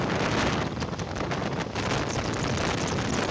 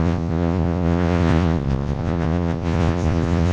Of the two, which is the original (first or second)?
first